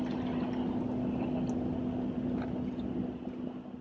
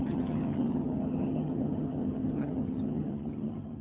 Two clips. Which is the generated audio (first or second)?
second